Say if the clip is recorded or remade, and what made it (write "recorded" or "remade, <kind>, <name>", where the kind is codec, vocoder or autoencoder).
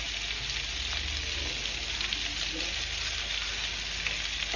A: recorded